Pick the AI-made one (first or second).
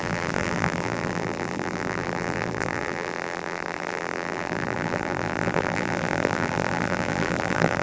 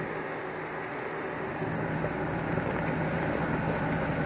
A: first